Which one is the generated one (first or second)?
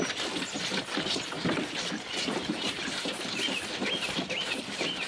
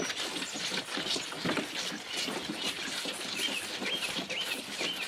first